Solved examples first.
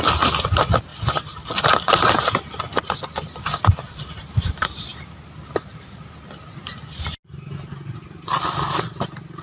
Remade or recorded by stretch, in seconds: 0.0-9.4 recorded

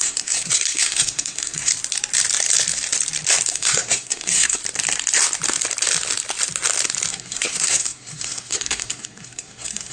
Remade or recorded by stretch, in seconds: 0.0-1.7 remade; 1.7-3.5 recorded; 3.5-4.6 remade; 4.6-7.1 recorded; 7.1-9.9 remade